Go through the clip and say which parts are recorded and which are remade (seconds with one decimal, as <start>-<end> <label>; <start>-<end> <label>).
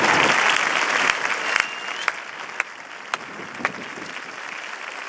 0.0-5.1 recorded